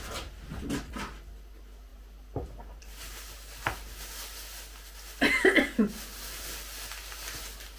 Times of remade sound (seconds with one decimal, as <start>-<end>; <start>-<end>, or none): none